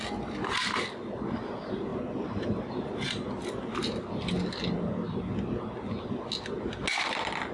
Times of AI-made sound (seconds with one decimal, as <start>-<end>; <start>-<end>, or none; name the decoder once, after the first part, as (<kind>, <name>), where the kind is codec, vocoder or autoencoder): none